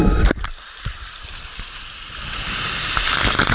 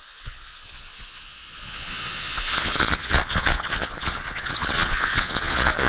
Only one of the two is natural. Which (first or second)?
first